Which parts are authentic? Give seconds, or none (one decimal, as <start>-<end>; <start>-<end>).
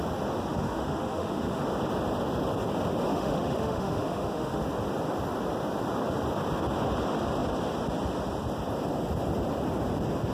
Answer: 0.0-0.5; 1.6-3.1; 4.6-10.3